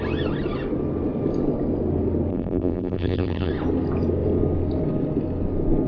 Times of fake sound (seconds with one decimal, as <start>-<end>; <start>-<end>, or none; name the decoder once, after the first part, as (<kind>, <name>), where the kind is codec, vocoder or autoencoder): 2.3-3.5 (vocoder, BigVGAN v2)